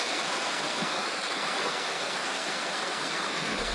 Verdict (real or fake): fake